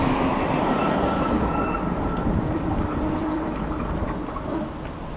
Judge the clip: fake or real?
fake